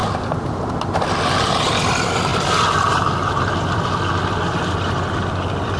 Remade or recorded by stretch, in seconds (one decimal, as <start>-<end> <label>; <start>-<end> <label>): 0.0-5.8 recorded

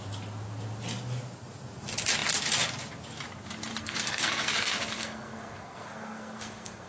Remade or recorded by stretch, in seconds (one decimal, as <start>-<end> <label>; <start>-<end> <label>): 0.0-3.7 recorded; 3.7-6.9 remade

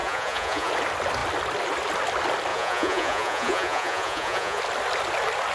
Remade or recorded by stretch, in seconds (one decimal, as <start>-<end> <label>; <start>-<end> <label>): 0.0-0.7 remade; 0.7-2.5 recorded; 2.5-4.6 remade; 4.6-5.5 recorded

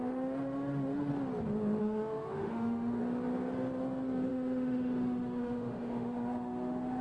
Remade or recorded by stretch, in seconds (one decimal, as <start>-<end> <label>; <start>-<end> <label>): 0.0-1.1 remade; 1.1-1.8 recorded; 1.8-3.0 remade; 3.0-4.3 recorded; 4.3-7.0 remade